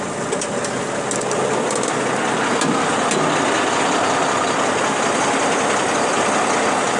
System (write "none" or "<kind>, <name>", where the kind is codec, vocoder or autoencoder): none